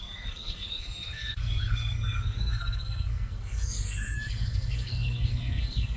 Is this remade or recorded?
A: remade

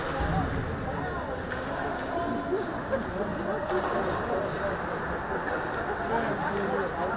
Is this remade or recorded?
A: recorded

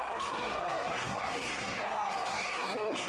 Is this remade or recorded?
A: remade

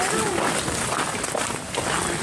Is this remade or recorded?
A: recorded